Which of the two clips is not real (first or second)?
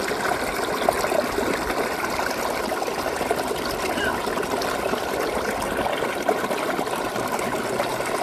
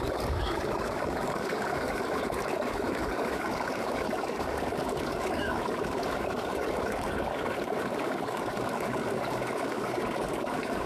second